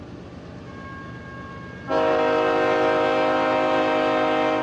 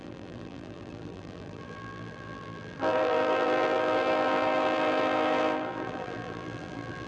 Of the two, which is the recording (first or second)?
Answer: first